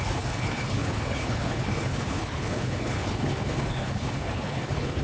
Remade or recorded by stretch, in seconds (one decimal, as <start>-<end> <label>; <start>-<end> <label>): 0.0-5.0 remade